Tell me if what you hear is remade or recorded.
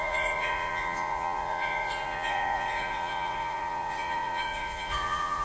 remade